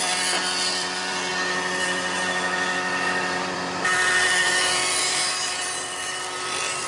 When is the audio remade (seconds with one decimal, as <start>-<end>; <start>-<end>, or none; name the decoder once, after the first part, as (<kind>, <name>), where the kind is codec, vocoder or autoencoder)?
0.0-6.9 (vocoder, BigVGAN v2)